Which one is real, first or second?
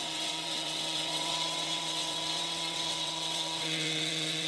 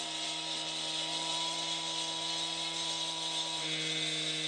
second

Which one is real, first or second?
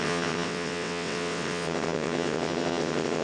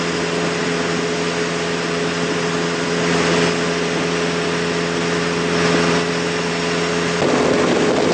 second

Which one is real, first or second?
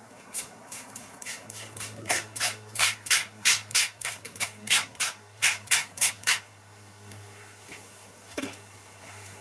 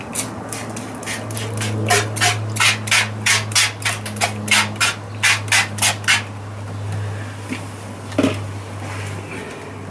second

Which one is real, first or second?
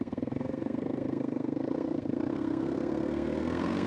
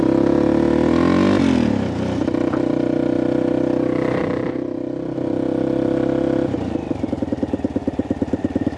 second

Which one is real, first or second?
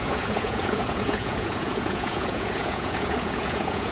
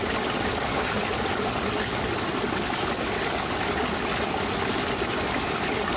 second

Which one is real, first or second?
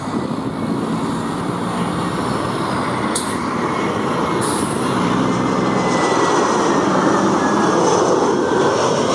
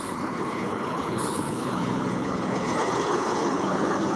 first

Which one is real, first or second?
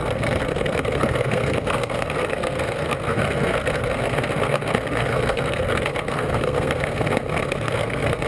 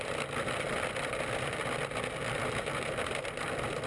second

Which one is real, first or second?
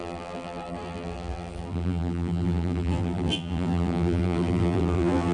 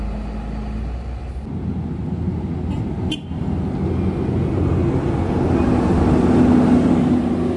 second